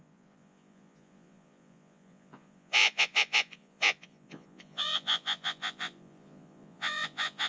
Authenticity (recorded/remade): remade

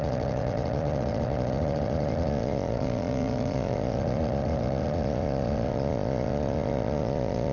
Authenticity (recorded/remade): remade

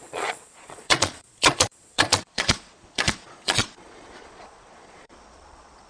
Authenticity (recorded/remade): remade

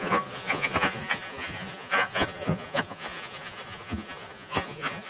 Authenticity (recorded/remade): remade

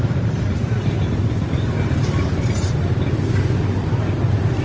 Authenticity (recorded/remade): recorded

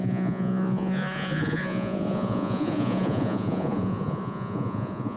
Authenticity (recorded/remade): remade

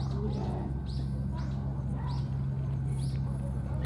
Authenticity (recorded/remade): recorded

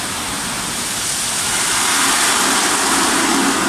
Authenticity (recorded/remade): recorded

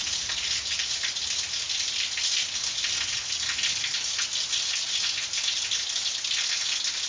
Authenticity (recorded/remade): recorded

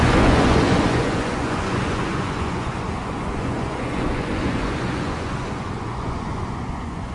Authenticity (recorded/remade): remade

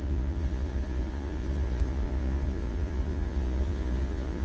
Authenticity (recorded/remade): remade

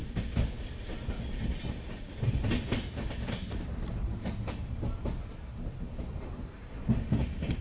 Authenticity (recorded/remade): recorded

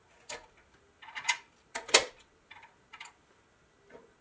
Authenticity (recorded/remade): recorded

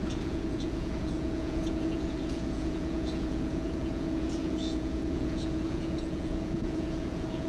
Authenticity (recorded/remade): remade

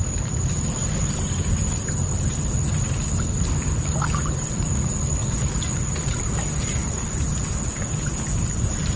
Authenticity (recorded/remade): recorded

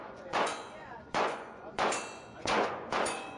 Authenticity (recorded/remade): remade